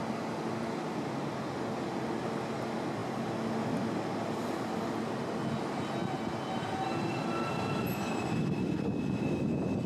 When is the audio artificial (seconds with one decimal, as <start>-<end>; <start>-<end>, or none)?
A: none